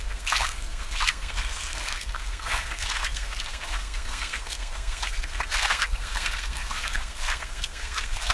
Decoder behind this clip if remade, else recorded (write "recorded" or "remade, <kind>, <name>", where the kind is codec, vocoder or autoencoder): remade, codec, SNAC